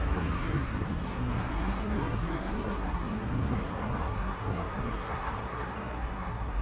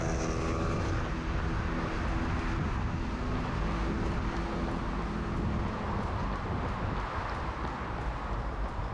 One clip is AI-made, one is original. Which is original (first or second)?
second